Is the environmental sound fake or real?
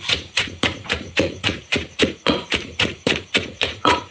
fake